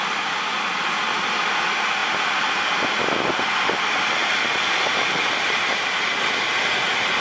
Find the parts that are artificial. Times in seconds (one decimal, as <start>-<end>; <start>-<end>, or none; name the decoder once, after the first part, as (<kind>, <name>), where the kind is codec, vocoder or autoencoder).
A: 4.2-4.7 (vocoder, BigVGAN v2)